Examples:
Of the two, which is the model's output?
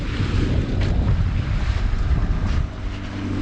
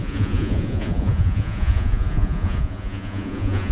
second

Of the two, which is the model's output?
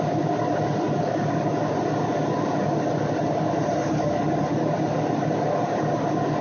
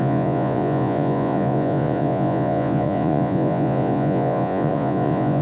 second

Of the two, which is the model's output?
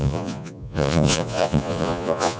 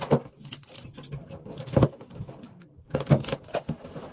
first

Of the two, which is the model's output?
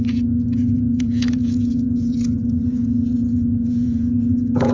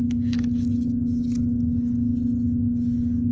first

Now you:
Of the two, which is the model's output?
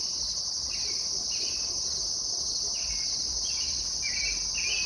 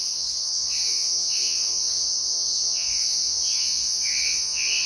second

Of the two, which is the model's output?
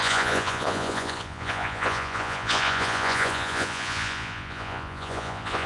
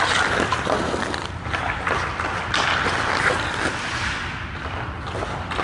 first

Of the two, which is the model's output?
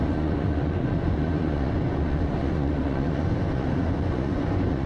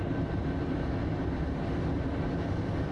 first